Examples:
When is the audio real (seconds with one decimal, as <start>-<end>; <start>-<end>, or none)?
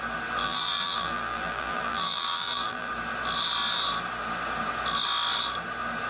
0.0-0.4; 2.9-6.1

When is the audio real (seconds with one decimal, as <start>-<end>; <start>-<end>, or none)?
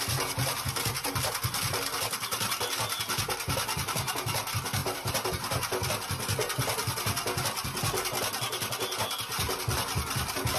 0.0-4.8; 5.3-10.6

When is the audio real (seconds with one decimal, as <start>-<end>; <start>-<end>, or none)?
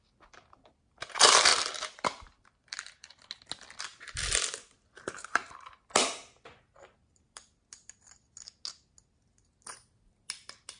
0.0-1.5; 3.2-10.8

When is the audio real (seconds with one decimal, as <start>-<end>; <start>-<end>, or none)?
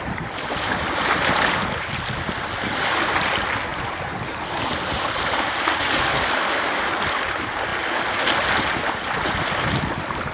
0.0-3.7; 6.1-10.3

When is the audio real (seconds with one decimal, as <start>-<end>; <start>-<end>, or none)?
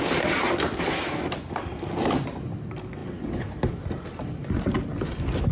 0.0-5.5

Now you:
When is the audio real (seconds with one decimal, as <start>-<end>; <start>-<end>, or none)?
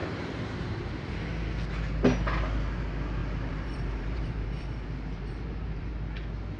1.1-3.2; 5.9-6.6